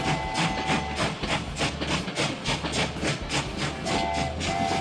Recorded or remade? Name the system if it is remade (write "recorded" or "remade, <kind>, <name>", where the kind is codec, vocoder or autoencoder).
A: recorded